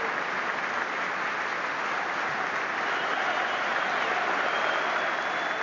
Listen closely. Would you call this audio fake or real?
real